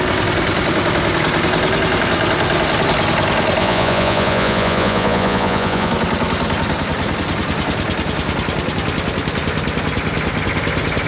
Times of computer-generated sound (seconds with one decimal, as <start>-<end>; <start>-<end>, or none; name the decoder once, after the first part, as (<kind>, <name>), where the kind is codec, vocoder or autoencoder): 3.6-5.9 (vocoder, Vocos)